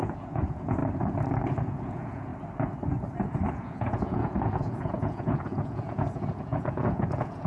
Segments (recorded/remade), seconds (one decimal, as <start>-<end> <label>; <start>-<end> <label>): 0.0-0.8 remade; 0.8-1.6 recorded; 1.6-2.3 remade; 2.3-3.5 recorded; 3.5-7.5 remade